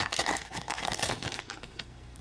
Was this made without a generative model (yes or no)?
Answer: no